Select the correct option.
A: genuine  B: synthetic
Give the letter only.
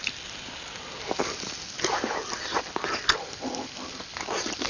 A